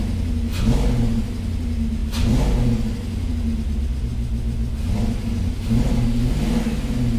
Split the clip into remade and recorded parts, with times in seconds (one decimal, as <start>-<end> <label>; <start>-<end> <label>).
0.0-7.2 recorded